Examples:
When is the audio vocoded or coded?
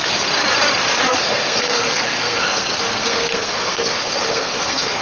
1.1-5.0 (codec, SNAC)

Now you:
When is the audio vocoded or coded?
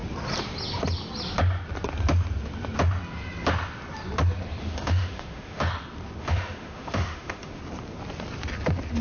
4.6-5.7 (autoencoder, DAC-VAE); 6.2-7.6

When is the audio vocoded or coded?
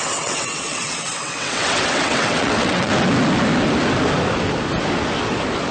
0.0-2.9 (vocoder, WaveNeXt)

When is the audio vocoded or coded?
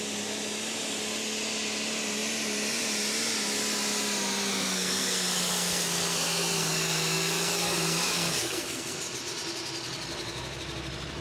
4.5-9.0 (codec, SNAC)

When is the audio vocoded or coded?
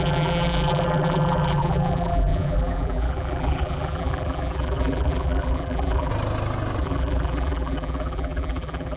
0.0-6.1 (vocoder, BigVGAN v2); 6.8-9.0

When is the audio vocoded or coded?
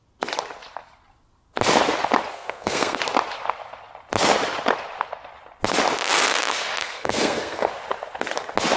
2.3-3.0 (codec, SNAC); 6.8-7.7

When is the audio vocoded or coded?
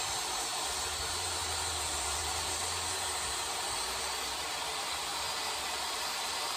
0.0-6.6 (vocoder, BigVGAN v2)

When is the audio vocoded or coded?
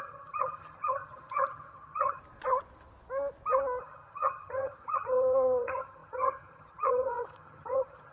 0.0-2.2 (vocoder, HiFi-GAN); 3.8-8.1